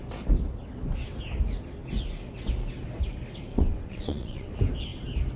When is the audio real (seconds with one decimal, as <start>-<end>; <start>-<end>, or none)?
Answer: 0.0-3.5; 4.5-5.4